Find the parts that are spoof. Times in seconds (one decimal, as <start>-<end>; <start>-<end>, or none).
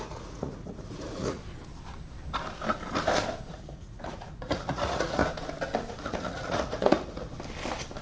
0.0-1.4; 3.5-5.2; 5.9-7.3